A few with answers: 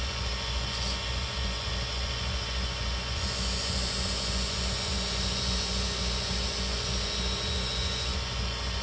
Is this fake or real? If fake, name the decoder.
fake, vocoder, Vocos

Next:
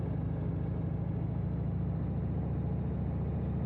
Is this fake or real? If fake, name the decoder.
real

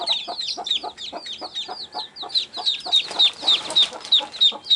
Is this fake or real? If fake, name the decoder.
real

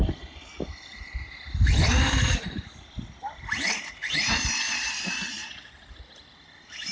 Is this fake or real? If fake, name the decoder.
real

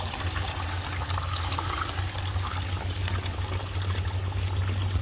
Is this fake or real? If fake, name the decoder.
real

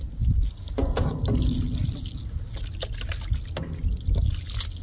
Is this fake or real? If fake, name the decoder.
real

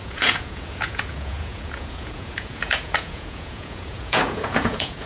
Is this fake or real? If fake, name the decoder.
fake, vocoder, Vocos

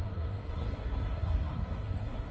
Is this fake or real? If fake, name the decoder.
fake, codec, SNAC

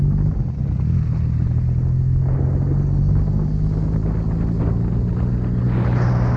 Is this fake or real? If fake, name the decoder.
real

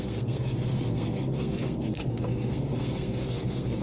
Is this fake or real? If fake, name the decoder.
fake, codec, SNAC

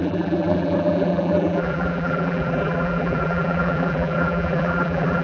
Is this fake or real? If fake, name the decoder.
fake, vocoder, BigVGAN v2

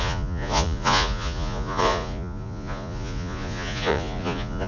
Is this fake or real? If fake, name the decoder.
fake, vocoder, Vocos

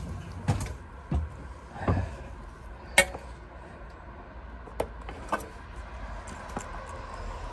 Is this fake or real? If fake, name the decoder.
real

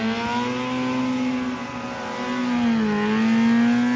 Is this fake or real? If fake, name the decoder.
real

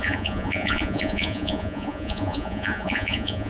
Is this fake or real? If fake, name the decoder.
fake, vocoder, Vocos